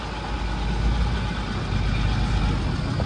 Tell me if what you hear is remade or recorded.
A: recorded